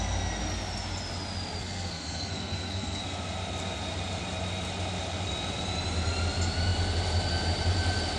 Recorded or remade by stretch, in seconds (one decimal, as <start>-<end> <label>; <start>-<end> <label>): 0.0-1.6 recorded; 1.6-3.0 remade; 3.0-8.2 recorded